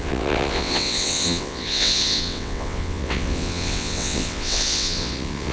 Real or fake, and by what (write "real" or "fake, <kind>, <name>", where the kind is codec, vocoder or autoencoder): fake, vocoder, WaveNeXt